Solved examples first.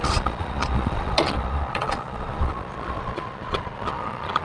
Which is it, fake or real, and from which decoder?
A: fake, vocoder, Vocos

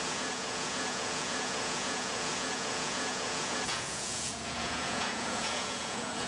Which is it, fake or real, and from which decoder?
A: fake, vocoder, Vocos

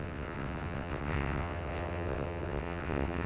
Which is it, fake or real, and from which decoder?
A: fake, vocoder, WaveNeXt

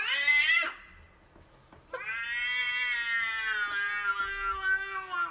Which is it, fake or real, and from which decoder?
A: real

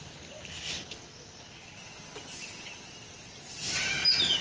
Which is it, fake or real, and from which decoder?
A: real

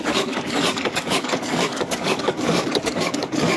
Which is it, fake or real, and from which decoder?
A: fake, codec, DAC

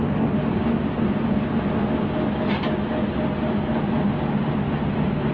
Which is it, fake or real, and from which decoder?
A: real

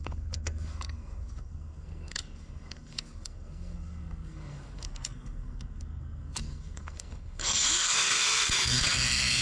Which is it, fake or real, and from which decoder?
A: fake, codec, SNAC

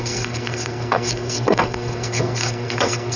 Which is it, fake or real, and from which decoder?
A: fake, codec, SNAC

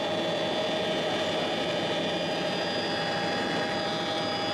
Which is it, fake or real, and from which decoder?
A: real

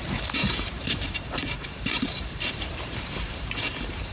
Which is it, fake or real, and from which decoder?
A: fake, vocoder, BigVGAN v2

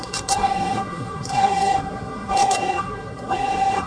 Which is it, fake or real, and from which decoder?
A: fake, codec, SNAC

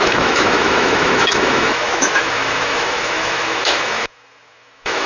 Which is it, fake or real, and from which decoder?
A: fake, autoencoder, DAC-VAE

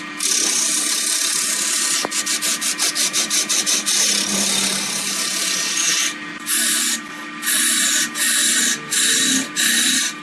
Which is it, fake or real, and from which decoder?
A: real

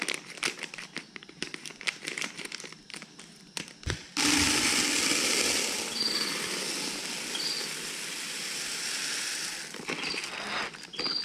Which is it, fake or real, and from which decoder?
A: real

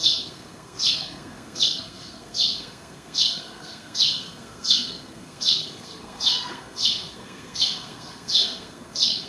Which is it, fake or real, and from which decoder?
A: fake, codec, SNAC